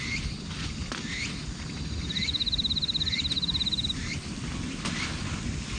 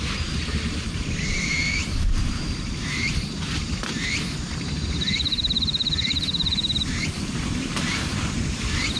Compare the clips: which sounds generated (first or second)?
second